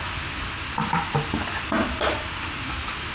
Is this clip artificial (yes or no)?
no